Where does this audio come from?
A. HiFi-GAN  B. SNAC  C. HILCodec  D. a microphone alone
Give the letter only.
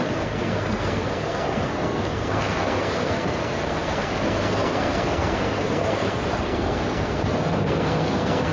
B